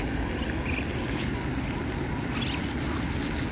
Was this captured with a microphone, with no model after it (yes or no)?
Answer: yes